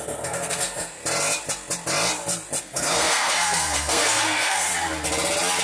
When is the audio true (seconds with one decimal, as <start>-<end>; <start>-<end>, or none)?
1.0-2.6; 4.7-5.6